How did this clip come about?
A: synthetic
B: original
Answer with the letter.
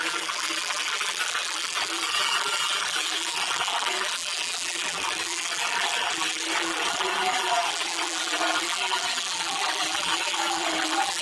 A